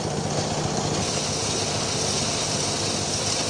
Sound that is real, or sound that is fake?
real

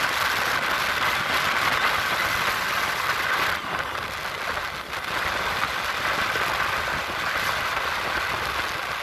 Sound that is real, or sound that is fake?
real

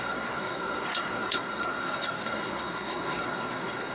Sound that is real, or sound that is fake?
fake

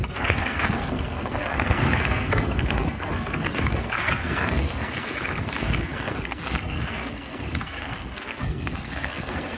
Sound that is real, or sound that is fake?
fake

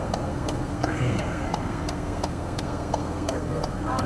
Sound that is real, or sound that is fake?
fake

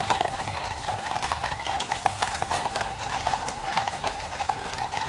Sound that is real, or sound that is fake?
fake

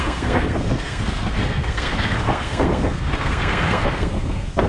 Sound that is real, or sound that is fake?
fake